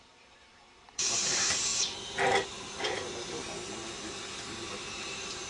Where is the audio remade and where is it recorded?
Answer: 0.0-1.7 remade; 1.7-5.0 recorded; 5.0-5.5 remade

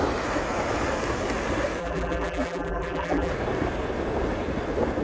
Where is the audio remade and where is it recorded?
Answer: 0.0-1.8 recorded; 1.8-3.3 remade; 3.3-5.0 recorded

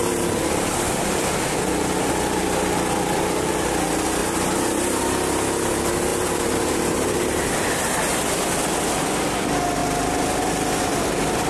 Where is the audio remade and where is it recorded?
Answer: 0.0-3.7 remade; 3.7-4.2 recorded; 4.2-4.8 remade; 4.8-6.1 recorded; 6.1-7.2 remade; 7.2-9.8 recorded; 9.8-10.4 remade; 10.4-11.5 recorded

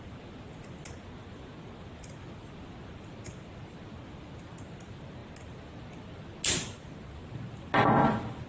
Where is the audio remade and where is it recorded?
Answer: 0.0-8.5 recorded

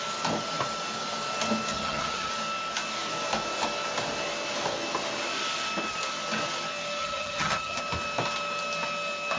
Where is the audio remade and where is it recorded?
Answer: 0.0-1.7 recorded; 1.7-2.3 remade; 2.3-7.0 recorded; 7.0-7.8 remade; 7.8-9.4 recorded

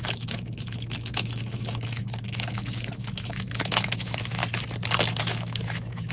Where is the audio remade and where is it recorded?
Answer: 0.0-4.4 remade; 4.4-5.2 recorded; 5.2-6.1 remade